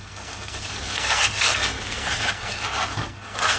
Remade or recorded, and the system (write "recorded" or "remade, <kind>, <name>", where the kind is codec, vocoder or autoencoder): remade, codec, SNAC